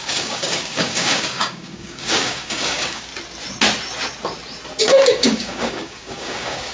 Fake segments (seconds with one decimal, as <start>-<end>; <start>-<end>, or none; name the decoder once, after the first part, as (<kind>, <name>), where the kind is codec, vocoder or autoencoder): 0.0-3.1 (codec, DAC); 4.8-6.7